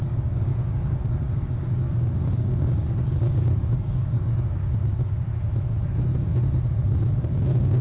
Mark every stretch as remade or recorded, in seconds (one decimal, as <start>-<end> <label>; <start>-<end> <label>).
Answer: 0.0-5.3 remade; 5.3-6.7 recorded; 6.7-7.8 remade